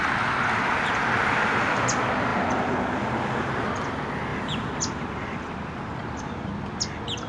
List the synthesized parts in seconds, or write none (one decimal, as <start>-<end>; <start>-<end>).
2.3-3.5; 4.3-6.5